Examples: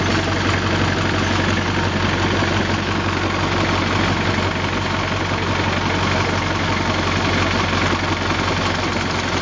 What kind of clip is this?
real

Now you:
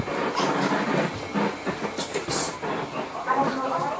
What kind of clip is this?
real